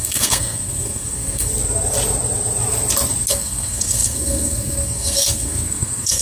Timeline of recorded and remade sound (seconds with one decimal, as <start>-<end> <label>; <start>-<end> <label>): 0.0-1.5 remade; 1.5-3.3 recorded; 3.3-6.2 remade